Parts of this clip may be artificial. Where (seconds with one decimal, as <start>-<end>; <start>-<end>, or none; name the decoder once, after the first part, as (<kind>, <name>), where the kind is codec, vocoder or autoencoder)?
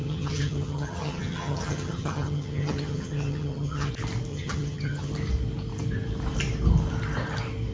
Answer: 0.0-3.9 (vocoder, HiFi-GAN); 4.3-5.1